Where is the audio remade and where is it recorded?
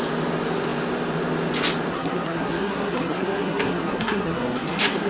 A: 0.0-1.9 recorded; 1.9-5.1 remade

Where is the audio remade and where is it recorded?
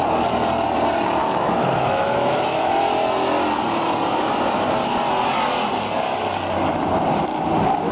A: 0.0-1.2 recorded; 1.2-2.7 remade; 2.7-7.9 recorded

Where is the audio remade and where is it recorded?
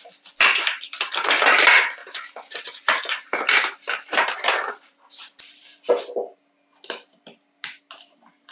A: 0.0-2.0 recorded; 2.0-5.9 remade; 5.9-8.5 recorded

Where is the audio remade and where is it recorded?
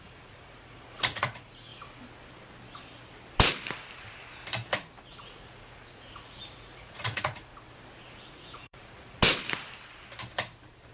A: 0.0-1.7 remade; 1.7-5.1 recorded; 5.1-7.5 remade; 7.5-8.3 recorded; 8.3-9.2 remade; 9.2-10.9 recorded